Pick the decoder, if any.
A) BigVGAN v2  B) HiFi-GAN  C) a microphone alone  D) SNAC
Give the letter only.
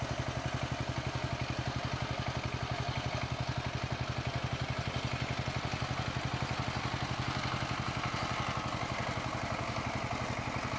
C